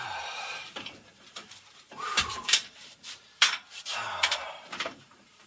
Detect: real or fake fake